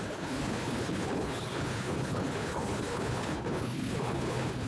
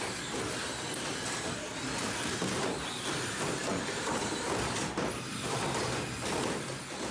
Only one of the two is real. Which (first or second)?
second